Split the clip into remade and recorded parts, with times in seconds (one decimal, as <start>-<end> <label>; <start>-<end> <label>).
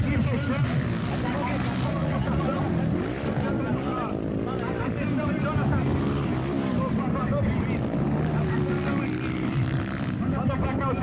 0.0-2.0 recorded; 2.0-2.6 remade; 2.6-11.0 recorded